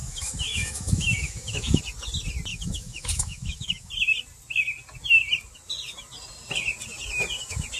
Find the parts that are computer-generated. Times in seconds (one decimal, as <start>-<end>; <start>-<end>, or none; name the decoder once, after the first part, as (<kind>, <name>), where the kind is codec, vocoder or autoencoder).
0.0-1.8 (autoencoder, DAC-VAE); 2.5-3.9